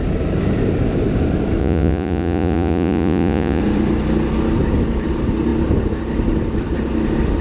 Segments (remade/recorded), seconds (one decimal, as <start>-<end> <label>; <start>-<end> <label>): 0.0-1.6 recorded; 1.6-3.6 remade; 3.6-7.4 recorded